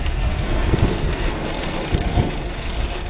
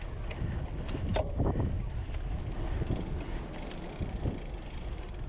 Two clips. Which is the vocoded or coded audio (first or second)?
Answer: first